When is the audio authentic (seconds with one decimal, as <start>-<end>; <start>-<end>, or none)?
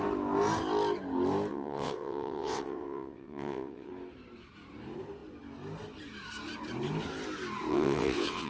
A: 0.0-1.5; 3.9-7.7